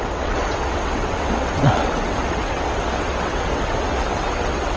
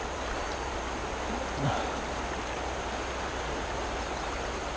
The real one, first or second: second